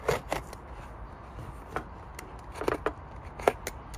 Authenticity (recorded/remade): recorded